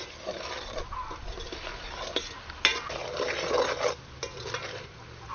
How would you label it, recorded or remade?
recorded